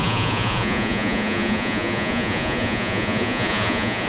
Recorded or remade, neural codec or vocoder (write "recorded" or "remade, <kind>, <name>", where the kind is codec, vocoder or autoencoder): remade, vocoder, Vocos